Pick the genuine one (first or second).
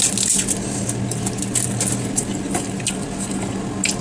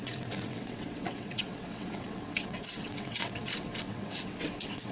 first